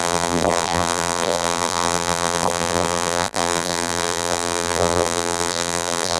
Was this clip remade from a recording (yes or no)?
yes